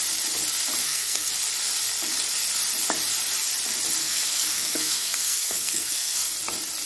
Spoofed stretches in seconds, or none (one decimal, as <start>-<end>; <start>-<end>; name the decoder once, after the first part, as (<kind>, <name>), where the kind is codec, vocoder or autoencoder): 0.8-1.3 (codec, SNAC); 4.0-6.3